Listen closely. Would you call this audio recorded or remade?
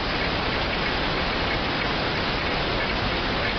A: recorded